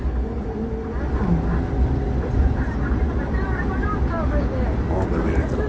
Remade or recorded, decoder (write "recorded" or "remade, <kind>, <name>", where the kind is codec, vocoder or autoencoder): recorded